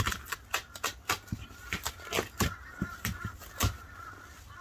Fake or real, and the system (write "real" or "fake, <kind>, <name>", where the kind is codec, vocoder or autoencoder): real